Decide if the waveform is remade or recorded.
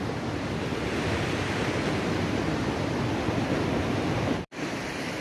recorded